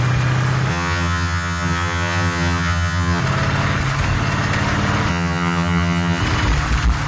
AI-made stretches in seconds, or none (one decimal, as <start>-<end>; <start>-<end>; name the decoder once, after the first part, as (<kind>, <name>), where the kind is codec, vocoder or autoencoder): 0.7-3.2 (vocoder, HiFi-GAN); 5.1-6.2